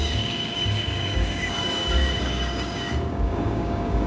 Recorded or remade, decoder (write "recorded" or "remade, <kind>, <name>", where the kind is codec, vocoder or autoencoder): remade, codec, DAC